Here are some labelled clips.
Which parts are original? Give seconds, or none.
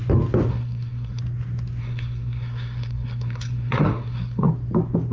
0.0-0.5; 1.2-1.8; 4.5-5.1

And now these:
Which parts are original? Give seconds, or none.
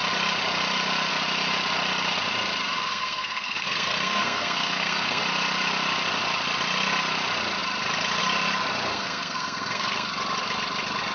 0.0-2.8; 5.2-8.9; 10.1-11.1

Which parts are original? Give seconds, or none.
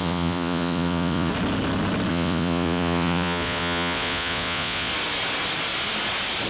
1.3-2.1; 4.9-6.5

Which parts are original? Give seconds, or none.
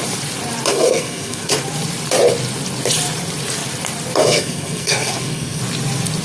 0.0-0.7; 1.5-4.2; 5.6-6.2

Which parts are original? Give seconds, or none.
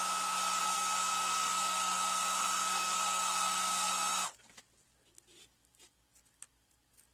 0.0-0.6; 3.9-7.1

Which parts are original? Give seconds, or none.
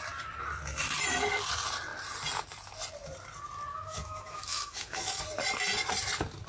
0.0-3.7; 5.2-6.5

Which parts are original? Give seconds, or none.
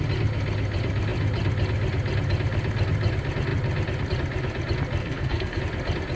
0.0-5.0; 5.6-6.2